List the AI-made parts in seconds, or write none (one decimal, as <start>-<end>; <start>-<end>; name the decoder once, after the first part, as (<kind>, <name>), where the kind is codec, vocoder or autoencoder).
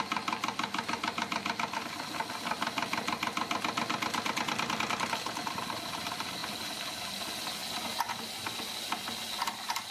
none